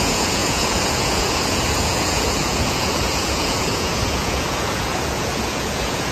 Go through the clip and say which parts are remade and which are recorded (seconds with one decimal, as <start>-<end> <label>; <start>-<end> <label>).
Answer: 0.0-6.1 remade